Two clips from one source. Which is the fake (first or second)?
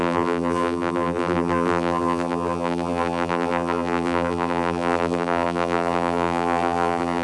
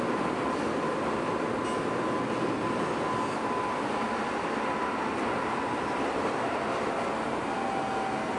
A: first